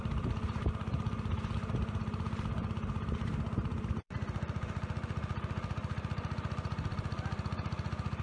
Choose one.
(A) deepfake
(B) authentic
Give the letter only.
A